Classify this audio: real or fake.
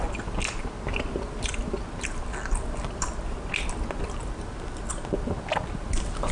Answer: real